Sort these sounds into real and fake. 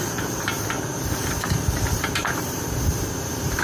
fake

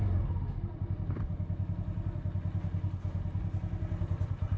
real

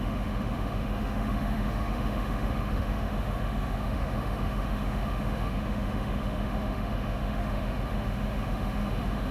fake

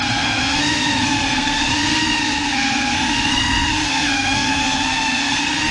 fake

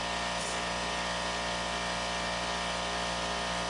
real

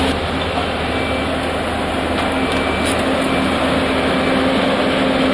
real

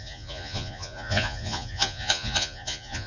fake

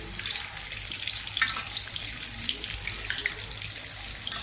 real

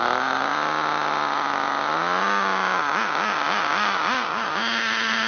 real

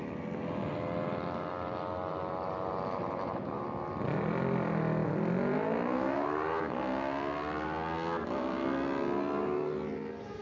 real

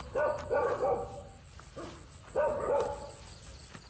real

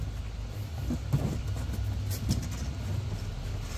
real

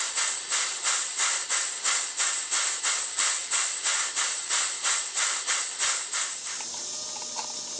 real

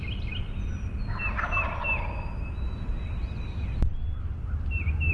real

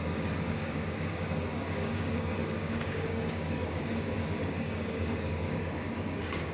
fake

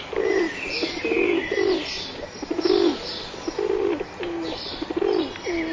real